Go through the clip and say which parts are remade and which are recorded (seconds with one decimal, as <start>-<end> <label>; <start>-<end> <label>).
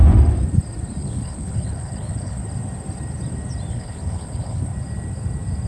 0.0-1.0 recorded; 1.0-2.4 remade; 2.4-3.7 recorded; 3.7-4.7 remade; 4.7-5.7 recorded